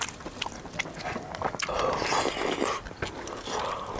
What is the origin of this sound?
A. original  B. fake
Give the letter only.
A